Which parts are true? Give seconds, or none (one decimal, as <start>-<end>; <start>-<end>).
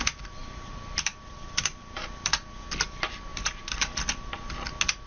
0.0-0.4; 2.3-3.3; 4.3-5.1